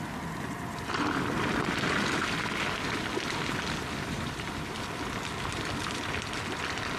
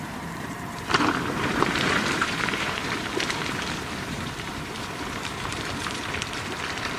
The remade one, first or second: second